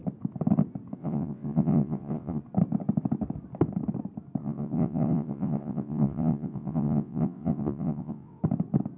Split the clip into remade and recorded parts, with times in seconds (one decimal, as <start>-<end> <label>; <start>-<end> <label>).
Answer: 0.0-1.0 recorded; 1.0-2.4 remade; 2.4-4.4 recorded; 4.4-8.4 remade; 8.4-9.0 recorded